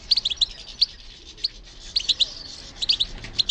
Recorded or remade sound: recorded